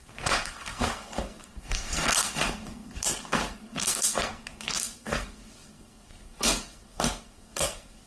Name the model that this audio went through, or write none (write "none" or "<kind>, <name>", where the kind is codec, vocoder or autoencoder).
codec, SNAC